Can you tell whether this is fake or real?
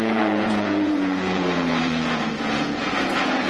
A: fake